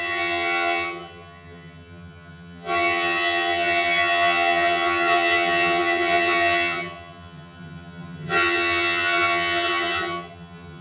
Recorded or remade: remade